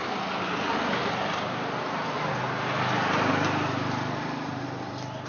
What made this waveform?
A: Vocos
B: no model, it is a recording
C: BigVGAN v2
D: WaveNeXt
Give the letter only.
B